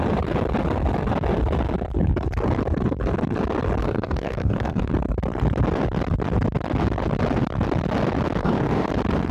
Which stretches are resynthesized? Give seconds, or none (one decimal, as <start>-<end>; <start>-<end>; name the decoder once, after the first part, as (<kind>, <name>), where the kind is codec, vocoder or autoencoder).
3.8-4.9 (codec, DAC); 8.4-8.9